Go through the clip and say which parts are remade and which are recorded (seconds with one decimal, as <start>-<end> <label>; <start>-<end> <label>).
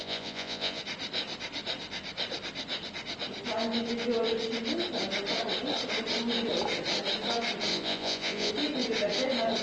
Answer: 0.0-0.8 remade; 0.8-7.7 recorded; 7.7-8.5 remade; 8.5-9.6 recorded